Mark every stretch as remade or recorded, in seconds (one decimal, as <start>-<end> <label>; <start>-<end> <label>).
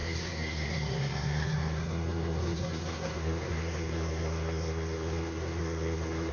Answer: 0.0-6.3 remade